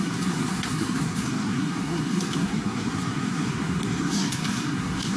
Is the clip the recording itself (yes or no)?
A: no